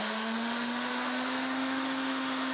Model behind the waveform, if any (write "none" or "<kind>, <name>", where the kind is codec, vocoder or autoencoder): autoencoder, DAC-VAE